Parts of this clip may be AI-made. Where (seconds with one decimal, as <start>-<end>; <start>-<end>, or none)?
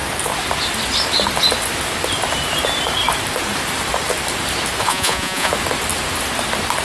4.8-5.5